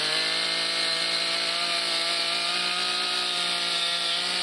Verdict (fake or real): fake